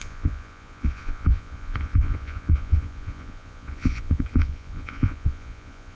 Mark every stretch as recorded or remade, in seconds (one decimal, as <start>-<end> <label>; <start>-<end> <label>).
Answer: 0.0-6.0 remade